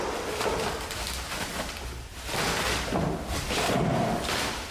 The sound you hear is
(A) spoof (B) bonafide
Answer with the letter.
B